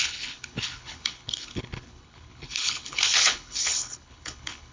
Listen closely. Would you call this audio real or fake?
fake